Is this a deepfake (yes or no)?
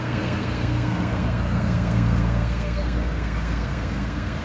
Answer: yes